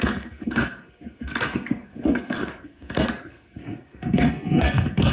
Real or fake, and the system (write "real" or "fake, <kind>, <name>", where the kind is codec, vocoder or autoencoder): fake, codec, SNAC